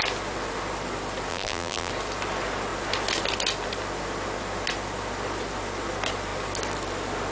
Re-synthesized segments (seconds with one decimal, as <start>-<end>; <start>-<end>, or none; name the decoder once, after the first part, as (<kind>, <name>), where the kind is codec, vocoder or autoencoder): 1.3-1.9 (vocoder, BigVGAN v2)